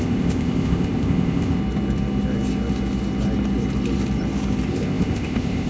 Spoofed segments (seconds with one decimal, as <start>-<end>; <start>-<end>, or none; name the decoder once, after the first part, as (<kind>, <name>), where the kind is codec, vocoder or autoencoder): 0.0-1.6 (codec, ZipCodec); 4.7-5.7